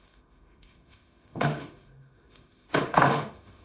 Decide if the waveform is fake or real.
fake